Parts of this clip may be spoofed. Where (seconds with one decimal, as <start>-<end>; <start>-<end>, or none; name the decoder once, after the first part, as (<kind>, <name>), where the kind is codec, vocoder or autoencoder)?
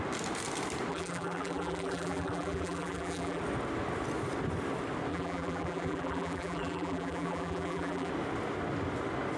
0.9-3.4 (vocoder, BigVGAN v2); 5.1-8.1